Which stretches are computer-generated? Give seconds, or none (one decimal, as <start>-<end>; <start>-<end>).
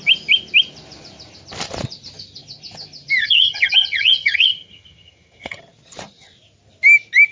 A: 3.2-5.6